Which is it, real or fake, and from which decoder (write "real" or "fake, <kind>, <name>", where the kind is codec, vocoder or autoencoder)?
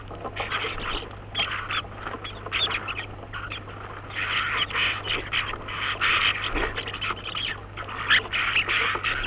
real